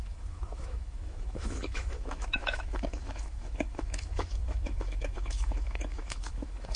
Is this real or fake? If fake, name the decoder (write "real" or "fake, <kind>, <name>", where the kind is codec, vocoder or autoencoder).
fake, autoencoder, DAC-VAE